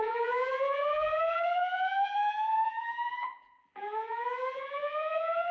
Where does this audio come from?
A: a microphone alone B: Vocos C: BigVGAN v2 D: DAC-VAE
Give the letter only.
C